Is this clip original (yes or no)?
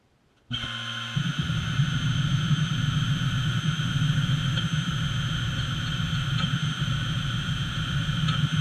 yes